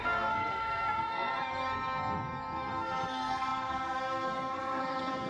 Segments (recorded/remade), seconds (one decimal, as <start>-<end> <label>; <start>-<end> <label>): 0.0-5.3 remade